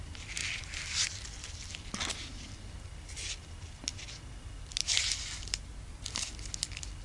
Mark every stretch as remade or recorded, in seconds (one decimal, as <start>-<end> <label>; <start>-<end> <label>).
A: 0.0-7.0 recorded